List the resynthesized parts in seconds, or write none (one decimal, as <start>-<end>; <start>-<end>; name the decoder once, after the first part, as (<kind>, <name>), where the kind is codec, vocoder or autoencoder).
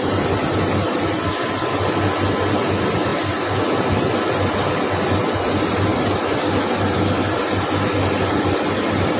none